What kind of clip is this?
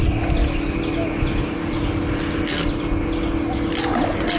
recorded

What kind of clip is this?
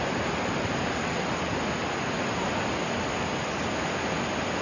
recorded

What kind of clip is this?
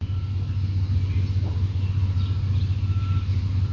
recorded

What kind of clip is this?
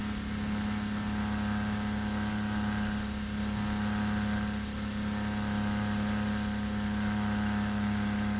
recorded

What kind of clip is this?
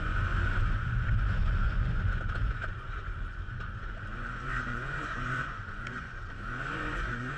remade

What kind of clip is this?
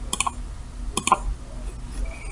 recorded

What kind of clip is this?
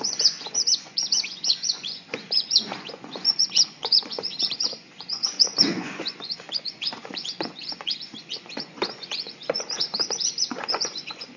remade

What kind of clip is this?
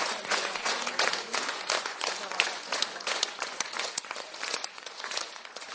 remade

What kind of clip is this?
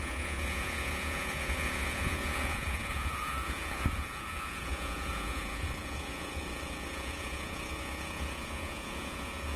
remade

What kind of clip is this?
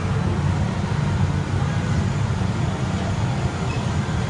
recorded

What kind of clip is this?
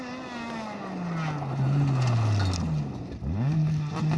recorded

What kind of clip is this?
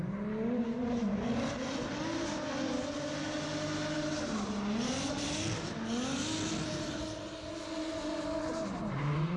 recorded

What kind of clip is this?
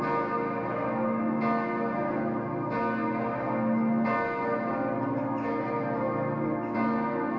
recorded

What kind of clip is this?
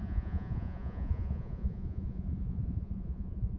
remade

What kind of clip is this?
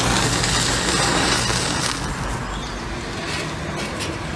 recorded